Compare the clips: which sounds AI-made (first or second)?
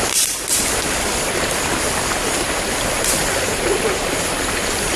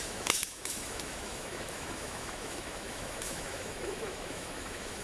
second